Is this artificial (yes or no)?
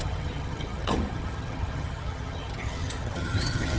yes